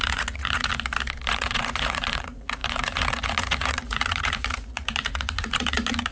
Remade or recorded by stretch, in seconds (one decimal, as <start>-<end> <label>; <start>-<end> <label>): 0.0-0.7 remade; 0.7-1.3 recorded; 1.3-6.1 remade